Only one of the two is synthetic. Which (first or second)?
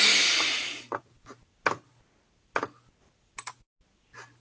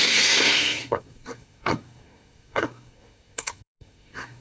second